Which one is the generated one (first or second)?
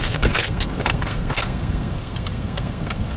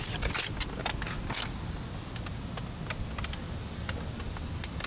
first